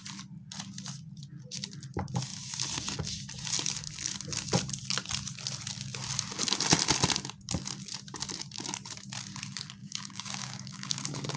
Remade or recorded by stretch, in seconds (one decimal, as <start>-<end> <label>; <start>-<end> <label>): 0.0-9.8 recorded; 9.8-11.0 remade; 11.0-11.4 recorded